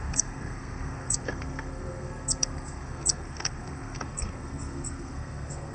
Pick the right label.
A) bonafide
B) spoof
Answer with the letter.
B